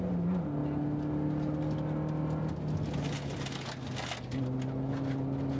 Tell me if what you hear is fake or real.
real